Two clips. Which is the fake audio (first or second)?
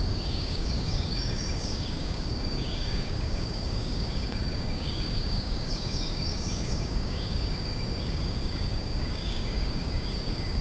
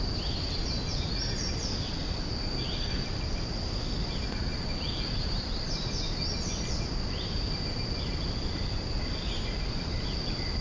first